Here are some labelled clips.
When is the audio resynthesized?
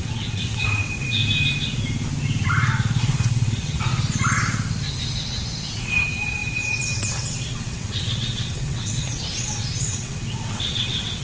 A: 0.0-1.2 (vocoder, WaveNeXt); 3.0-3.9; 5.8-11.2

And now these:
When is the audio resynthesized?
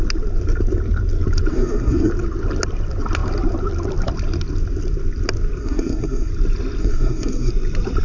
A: 1.5-2.1 (codec, SNAC); 5.6-6.3; 6.8-7.5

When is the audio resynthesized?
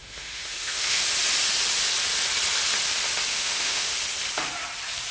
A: 0.0-1.0 (autoencoder, DAC-VAE); 3.3-3.9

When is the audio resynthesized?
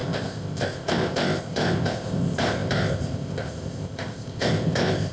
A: 0.0-5.1 (codec, ZipCodec)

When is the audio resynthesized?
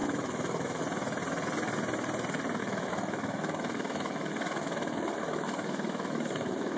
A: 0.0-0.8 (autoencoder, DAC-VAE); 2.6-6.8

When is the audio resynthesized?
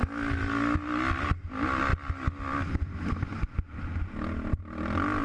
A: none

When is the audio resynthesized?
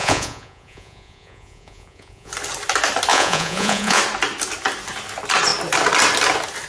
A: 0.0-2.3 (vocoder, Vocos); 3.1-4.0